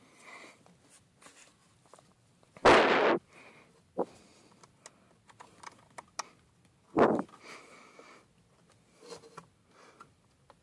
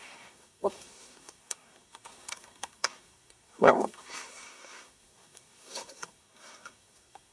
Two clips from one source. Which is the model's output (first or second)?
second